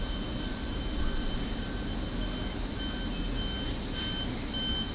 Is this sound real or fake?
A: real